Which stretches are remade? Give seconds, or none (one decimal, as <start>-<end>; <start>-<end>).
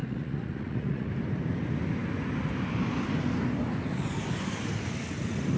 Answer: 0.0-1.1